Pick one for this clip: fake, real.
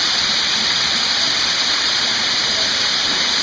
fake